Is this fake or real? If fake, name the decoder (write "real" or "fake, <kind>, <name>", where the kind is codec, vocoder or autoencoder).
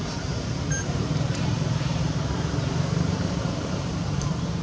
fake, vocoder, BigVGAN v2